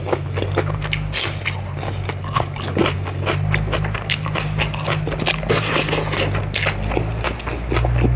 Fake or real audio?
real